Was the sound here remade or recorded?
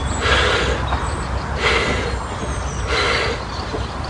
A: recorded